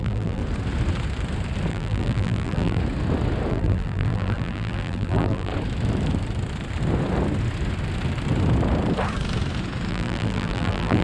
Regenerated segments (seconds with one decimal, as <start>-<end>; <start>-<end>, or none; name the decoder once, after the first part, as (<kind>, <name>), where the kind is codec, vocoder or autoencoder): 0.0-0.4 (vocoder, BigVGAN v2); 1.7-2.8; 3.5-5.5; 9.9-11.0